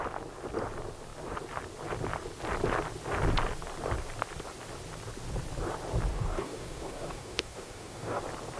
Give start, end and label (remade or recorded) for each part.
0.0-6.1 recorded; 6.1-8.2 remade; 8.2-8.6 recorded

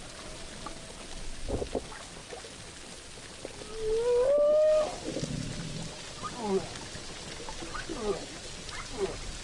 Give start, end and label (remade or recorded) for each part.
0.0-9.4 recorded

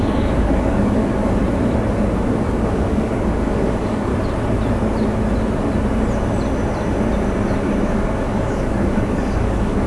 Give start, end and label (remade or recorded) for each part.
0.0-1.4 remade; 1.4-2.4 recorded; 2.4-4.1 remade; 4.1-7.8 recorded; 7.8-9.9 remade